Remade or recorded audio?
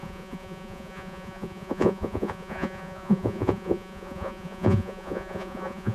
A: remade